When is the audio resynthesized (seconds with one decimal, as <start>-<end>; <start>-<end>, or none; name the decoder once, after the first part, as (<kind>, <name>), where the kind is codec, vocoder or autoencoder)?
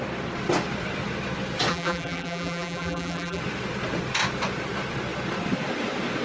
1.7-3.4 (vocoder, BigVGAN v2)